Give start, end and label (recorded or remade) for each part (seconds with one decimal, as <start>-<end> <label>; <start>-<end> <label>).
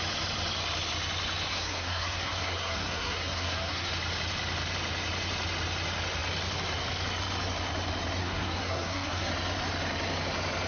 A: 0.0-1.5 recorded; 1.5-3.9 remade; 3.9-8.2 recorded; 8.2-9.3 remade; 9.3-10.7 recorded